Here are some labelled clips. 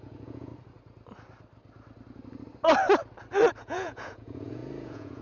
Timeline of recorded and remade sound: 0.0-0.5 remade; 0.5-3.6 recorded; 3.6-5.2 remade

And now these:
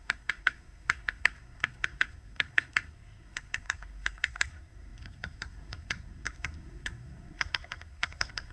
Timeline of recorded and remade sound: 0.0-8.5 remade